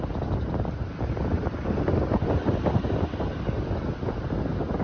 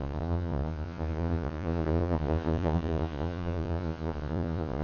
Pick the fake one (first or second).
second